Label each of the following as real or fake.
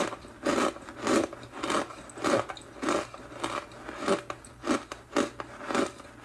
real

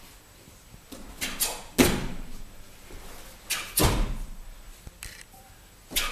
real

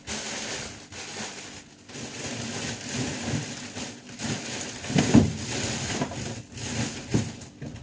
real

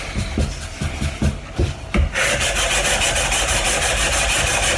real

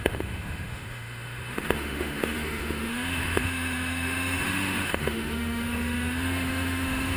fake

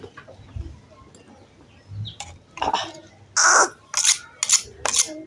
real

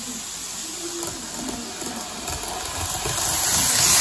real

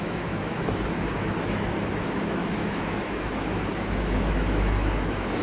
fake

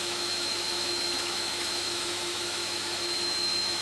fake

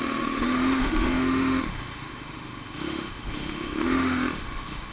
fake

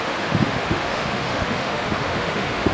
fake